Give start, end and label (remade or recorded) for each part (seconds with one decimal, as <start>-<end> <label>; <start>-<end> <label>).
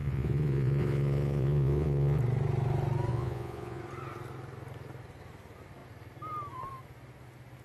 0.0-2.2 remade; 2.2-3.1 recorded; 3.1-3.8 remade; 3.8-7.6 recorded